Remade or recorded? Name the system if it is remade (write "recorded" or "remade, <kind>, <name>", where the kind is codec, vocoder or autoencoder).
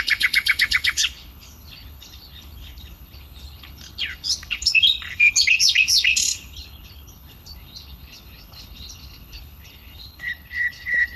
remade, codec, HILCodec